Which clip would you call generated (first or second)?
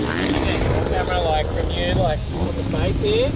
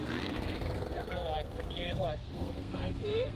second